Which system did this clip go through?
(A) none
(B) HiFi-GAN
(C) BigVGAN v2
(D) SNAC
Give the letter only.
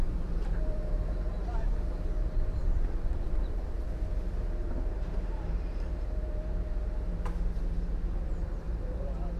C